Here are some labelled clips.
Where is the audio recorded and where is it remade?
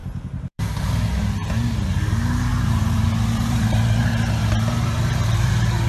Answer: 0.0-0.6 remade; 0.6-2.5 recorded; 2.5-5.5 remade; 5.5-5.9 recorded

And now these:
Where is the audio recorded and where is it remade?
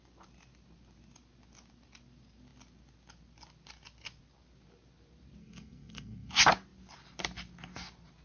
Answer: 0.0-5.4 recorded; 5.4-6.3 remade; 6.3-8.2 recorded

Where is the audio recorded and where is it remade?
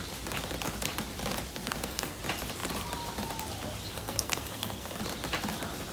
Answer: 0.0-1.5 recorded; 1.5-2.2 remade; 2.2-3.9 recorded; 3.9-5.0 remade; 5.0-5.9 recorded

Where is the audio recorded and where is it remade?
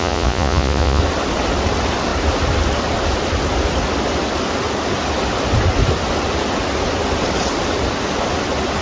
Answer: 0.0-1.0 remade; 1.0-8.8 recorded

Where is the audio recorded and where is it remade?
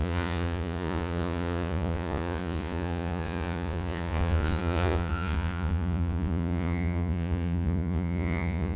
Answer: 0.0-8.8 remade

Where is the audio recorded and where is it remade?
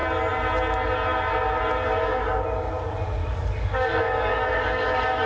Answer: 0.0-2.0 recorded; 2.0-2.7 remade; 2.7-3.2 recorded; 3.2-5.3 remade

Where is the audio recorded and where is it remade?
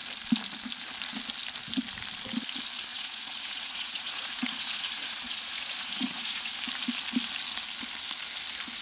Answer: 0.0-2.9 recorded; 2.9-6.5 remade; 6.5-8.8 recorded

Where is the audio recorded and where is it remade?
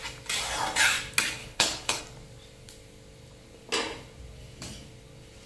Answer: 0.0-1.4 recorded; 1.4-2.0 remade; 2.0-5.5 recorded